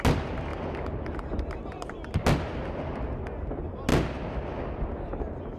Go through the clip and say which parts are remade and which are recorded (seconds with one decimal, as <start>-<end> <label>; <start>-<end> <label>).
0.0-5.6 recorded